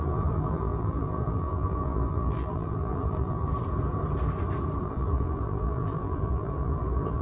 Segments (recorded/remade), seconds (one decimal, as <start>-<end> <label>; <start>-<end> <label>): 0.0-3.5 remade; 3.5-4.8 recorded; 4.8-7.2 remade